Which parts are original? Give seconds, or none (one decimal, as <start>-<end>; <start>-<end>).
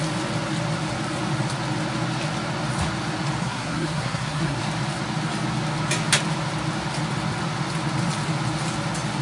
0.0-3.4; 4.6-9.2